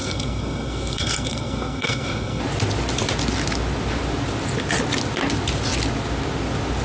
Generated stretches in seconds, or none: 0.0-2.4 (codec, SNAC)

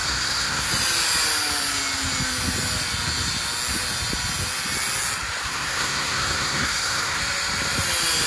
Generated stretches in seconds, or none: 0.0-0.7 (codec, SNAC); 5.4-7.2

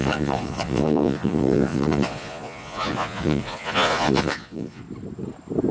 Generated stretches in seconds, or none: 0.0-4.8 (vocoder, Vocos)